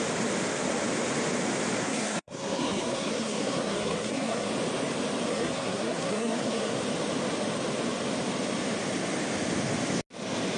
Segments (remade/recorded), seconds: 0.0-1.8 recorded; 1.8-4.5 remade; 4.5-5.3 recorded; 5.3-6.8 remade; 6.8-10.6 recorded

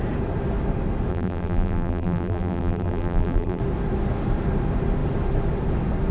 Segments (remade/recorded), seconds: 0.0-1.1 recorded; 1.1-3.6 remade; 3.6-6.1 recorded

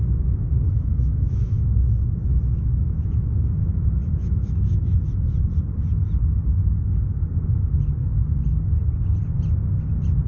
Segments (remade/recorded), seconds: 0.0-0.9 recorded; 0.9-5.1 remade; 5.1-10.3 recorded

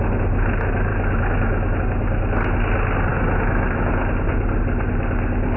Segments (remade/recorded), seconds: 0.0-0.9 recorded; 0.9-1.8 remade; 1.8-3.1 recorded; 3.1-3.9 remade; 3.9-5.6 recorded